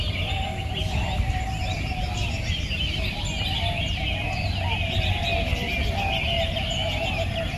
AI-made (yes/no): no